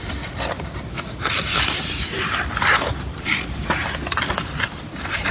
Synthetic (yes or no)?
yes